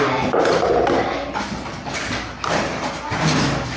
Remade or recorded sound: recorded